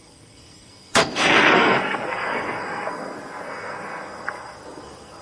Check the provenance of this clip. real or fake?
fake